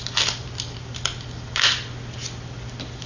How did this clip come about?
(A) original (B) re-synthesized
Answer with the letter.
A